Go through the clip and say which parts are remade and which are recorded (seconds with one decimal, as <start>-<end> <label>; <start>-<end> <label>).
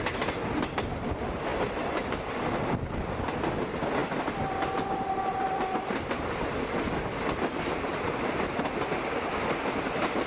0.0-1.5 recorded; 1.5-2.3 remade; 2.3-4.0 recorded; 4.0-6.2 remade; 6.2-7.1 recorded; 7.1-7.9 remade; 7.9-10.3 recorded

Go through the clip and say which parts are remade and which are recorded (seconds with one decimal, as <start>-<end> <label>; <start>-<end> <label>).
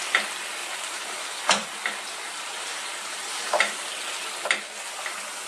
0.0-0.6 recorded; 0.6-3.9 remade; 3.9-5.5 recorded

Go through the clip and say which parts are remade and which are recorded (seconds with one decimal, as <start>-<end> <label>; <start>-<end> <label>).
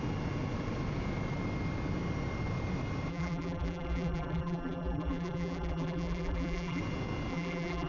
0.0-3.1 recorded; 3.1-6.8 remade; 6.8-7.3 recorded; 7.3-7.9 remade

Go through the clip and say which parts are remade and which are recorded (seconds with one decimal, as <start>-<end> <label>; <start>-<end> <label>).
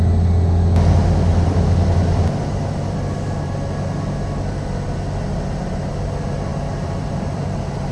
0.0-6.5 recorded; 6.5-7.4 remade; 7.4-7.9 recorded